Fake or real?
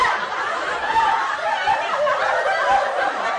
real